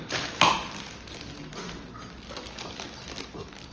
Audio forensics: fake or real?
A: real